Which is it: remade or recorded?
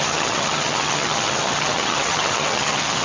remade